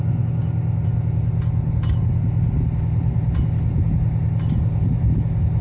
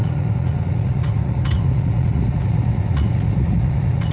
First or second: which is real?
first